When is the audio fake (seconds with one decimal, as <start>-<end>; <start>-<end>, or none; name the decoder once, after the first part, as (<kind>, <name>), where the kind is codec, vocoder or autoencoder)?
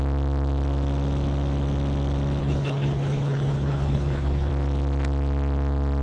2.4-4.5 (codec, HILCodec)